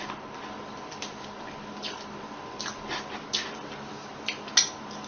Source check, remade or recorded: recorded